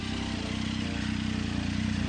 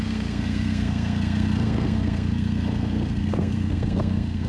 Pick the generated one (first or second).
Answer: second